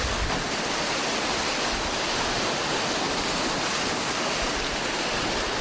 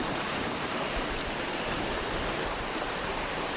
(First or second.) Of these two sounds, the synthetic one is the second